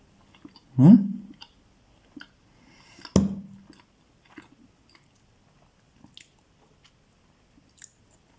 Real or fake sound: real